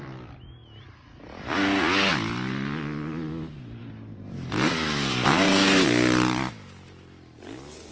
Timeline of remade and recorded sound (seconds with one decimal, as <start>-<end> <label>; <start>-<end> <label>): 0.0-3.8 recorded; 3.8-5.8 remade; 5.8-7.9 recorded